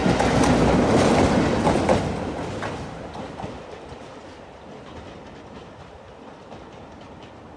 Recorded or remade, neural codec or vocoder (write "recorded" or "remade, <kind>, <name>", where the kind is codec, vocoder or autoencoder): recorded